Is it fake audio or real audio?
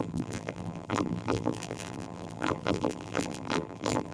fake